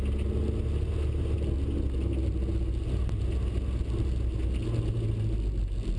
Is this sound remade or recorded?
recorded